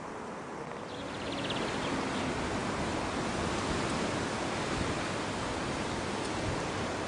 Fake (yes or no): no